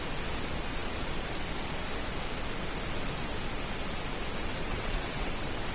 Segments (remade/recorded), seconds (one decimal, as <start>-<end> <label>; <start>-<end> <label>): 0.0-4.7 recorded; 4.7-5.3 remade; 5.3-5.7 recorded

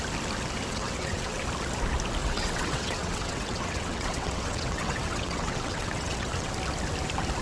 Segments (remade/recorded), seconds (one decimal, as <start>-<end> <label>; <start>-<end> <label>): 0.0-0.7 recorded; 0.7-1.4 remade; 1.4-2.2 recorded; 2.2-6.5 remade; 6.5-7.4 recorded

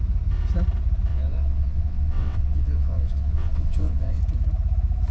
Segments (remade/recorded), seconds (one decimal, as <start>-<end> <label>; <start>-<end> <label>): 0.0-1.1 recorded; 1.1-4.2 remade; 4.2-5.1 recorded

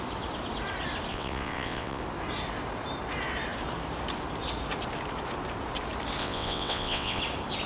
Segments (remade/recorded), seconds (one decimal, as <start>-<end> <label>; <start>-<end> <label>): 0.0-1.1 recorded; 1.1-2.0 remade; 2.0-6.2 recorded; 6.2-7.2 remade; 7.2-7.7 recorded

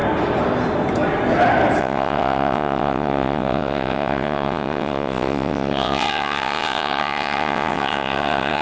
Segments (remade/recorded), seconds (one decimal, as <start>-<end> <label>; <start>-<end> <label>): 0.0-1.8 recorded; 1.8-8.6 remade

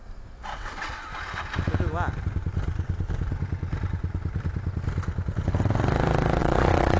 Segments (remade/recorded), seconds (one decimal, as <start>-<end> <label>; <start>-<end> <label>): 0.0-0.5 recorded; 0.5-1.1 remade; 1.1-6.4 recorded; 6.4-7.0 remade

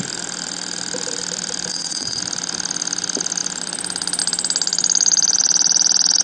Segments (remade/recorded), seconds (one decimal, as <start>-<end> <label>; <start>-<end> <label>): 0.0-1.7 recorded; 1.7-2.2 remade; 2.2-6.2 recorded